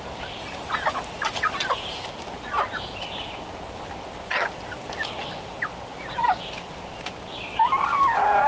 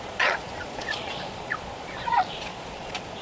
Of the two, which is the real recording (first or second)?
first